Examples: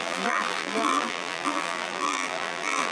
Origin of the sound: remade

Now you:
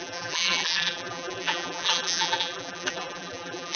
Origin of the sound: remade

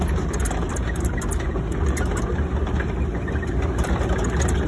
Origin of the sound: remade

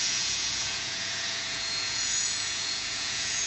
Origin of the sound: remade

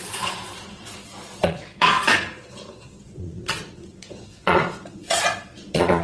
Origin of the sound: remade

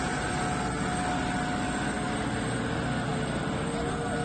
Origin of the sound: recorded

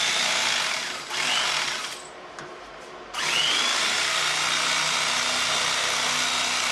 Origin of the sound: recorded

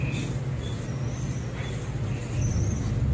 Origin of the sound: recorded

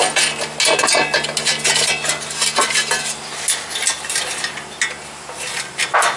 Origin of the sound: recorded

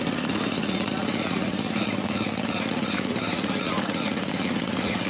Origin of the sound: remade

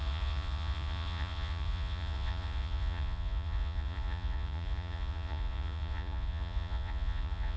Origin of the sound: remade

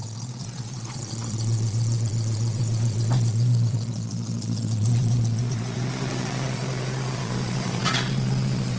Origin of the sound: remade